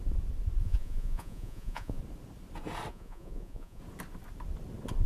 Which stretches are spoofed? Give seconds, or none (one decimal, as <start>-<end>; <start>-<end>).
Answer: 0.6-2.0; 2.9-3.8